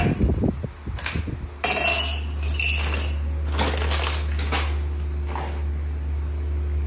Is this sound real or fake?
real